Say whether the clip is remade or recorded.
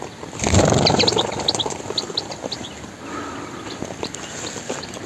recorded